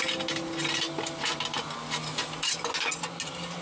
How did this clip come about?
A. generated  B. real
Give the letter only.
B